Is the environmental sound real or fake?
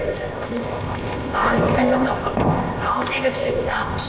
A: fake